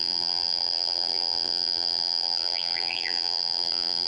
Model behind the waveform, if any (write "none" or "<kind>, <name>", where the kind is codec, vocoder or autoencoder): vocoder, BigVGAN v2